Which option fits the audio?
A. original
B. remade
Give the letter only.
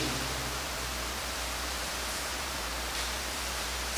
B